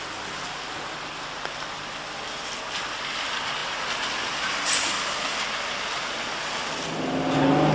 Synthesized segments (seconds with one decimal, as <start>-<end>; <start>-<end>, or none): none

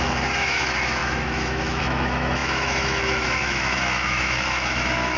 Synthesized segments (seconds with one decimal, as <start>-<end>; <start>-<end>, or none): 0.0-5.2

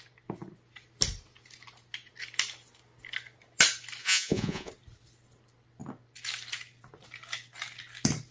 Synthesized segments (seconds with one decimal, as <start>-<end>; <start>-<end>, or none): 4.0-4.7